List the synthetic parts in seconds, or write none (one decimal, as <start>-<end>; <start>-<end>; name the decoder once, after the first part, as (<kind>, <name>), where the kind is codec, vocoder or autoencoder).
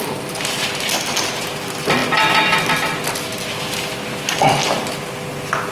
none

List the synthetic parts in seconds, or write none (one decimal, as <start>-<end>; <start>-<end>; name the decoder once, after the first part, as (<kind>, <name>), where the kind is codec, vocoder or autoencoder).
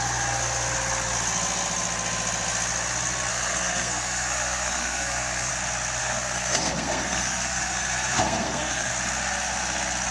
3.3-5.5 (codec, SNAC); 6.0-8.9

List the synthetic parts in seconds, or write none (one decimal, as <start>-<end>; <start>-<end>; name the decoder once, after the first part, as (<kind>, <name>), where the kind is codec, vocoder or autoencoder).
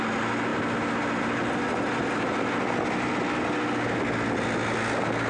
none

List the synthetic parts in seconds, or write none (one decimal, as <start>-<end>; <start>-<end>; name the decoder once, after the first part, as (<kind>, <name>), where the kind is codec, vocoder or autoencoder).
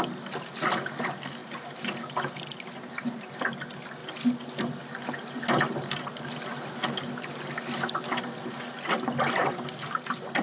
none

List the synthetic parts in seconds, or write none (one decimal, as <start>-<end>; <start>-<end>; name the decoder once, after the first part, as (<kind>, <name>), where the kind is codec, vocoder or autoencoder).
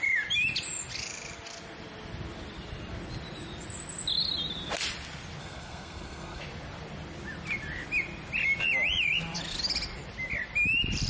5.4-6.4 (codec, SNAC)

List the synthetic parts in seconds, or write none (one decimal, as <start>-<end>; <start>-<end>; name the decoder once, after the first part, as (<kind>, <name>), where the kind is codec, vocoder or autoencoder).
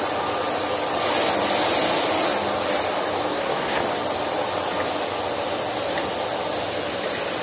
3.3-3.8 (codec, SNAC)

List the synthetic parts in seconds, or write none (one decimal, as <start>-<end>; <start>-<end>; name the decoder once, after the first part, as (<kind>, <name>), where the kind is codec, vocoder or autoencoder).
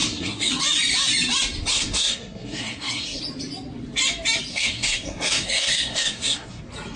0.0-0.5 (codec, SNAC); 1.7-3.2; 4.5-6.6